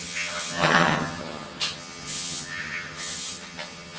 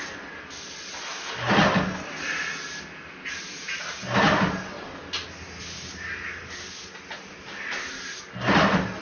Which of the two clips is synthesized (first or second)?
first